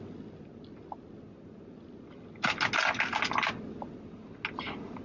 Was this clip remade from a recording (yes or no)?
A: no